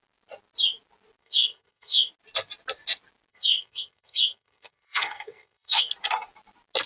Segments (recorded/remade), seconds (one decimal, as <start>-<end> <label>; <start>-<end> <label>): 0.0-1.2 recorded; 1.2-2.1 remade; 2.1-3.3 recorded; 3.3-5.9 remade; 5.9-6.9 recorded